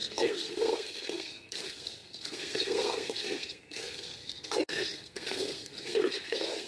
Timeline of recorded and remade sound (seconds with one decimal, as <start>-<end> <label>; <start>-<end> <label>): 0.0-6.7 remade